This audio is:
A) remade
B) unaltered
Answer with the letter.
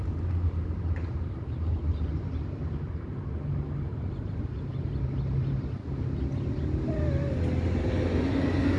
B